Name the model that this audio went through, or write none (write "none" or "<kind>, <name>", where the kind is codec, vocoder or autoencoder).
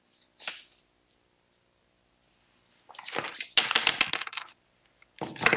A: none